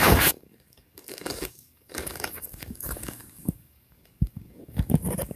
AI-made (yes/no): yes